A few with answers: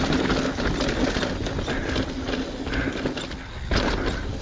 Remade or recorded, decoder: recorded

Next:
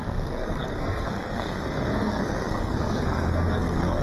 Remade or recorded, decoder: remade, codec, SNAC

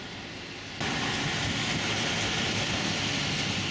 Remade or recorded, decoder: recorded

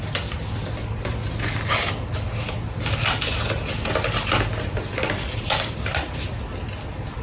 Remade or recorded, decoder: recorded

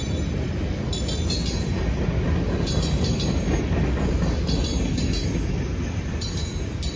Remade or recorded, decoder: recorded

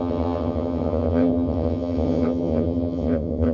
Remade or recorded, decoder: remade, vocoder, HiFi-GAN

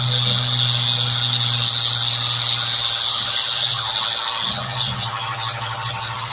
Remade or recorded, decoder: recorded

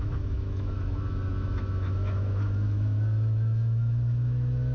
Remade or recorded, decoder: remade, autoencoder, DAC-VAE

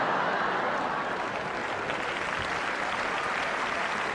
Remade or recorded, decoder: recorded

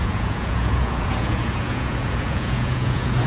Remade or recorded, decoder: remade, vocoder, Vocos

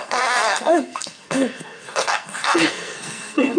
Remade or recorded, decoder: remade, codec, SNAC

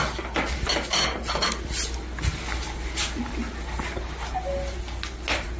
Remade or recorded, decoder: recorded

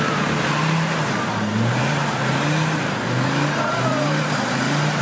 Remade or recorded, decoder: remade, vocoder, BigVGAN v2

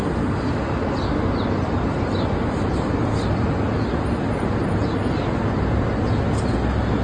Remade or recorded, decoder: recorded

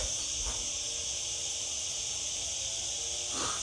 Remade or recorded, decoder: recorded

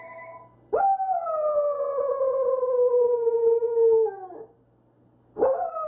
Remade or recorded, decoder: recorded